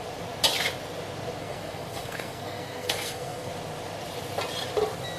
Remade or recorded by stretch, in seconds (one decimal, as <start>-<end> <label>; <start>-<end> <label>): 0.0-1.4 recorded; 1.4-3.5 remade; 3.5-5.2 recorded